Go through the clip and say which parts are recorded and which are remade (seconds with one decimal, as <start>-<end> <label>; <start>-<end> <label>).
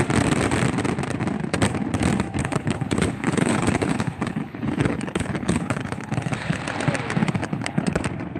0.0-2.4 recorded; 2.4-6.6 remade; 6.6-7.2 recorded; 7.2-8.0 remade; 8.0-8.4 recorded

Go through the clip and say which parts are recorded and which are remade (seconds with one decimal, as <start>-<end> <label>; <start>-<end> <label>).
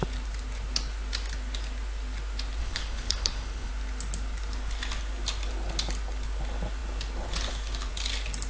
0.0-2.6 recorded; 2.6-3.7 remade; 3.7-8.5 recorded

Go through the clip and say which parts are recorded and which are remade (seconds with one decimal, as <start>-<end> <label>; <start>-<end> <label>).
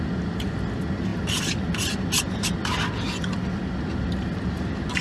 0.0-5.0 recorded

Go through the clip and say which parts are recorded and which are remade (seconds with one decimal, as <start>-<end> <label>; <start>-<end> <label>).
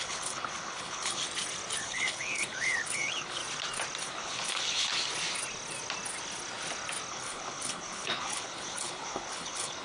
0.0-1.2 remade; 1.2-1.8 recorded; 1.8-3.4 remade; 3.4-4.0 recorded; 4.0-4.9 remade; 4.9-7.1 recorded; 7.1-9.8 remade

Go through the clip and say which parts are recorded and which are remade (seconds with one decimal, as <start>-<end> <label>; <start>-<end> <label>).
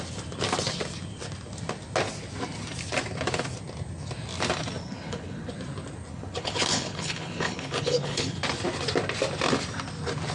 0.0-4.8 recorded; 4.8-5.5 remade; 5.5-6.1 recorded; 6.1-8.4 remade; 8.4-10.3 recorded